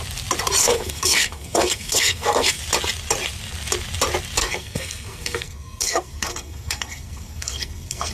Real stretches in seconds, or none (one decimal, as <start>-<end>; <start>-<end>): 0.0-0.6; 2.6-4.4